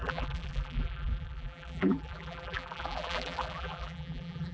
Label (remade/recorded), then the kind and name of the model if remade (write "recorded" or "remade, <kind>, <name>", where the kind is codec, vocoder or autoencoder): remade, vocoder, BigVGAN v2